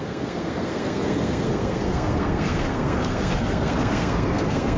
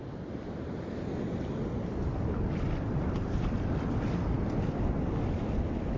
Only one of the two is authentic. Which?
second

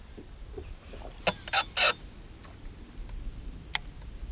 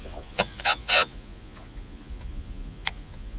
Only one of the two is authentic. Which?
first